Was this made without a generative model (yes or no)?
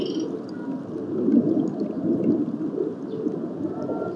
yes